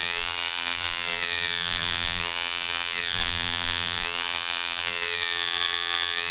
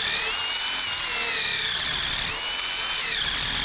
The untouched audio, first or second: second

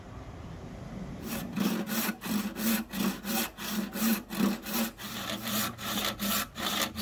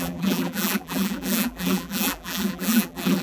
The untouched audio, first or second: first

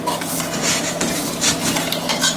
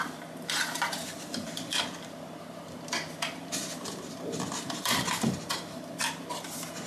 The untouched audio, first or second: first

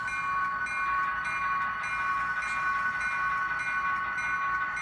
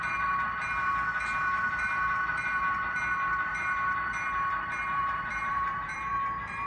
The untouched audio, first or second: first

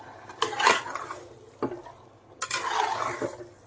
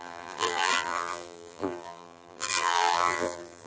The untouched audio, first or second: first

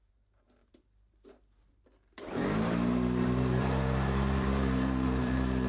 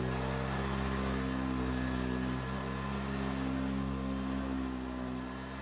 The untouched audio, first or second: second